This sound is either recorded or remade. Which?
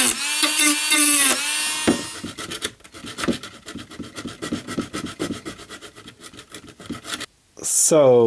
recorded